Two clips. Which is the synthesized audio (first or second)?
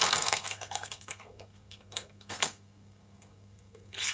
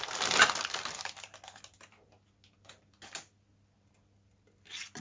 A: first